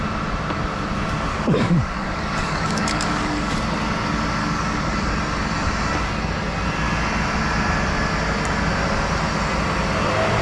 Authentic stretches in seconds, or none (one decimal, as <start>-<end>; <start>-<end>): 0.0-1.3; 3.5-4.4; 5.1-10.4